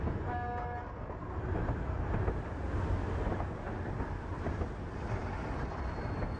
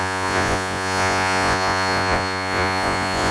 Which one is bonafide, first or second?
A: first